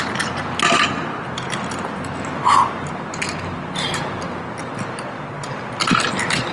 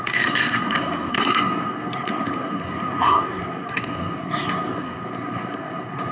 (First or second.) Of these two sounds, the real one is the first